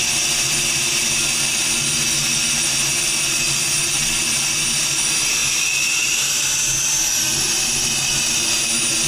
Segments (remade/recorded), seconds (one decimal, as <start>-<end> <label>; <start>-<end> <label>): 0.0-9.1 recorded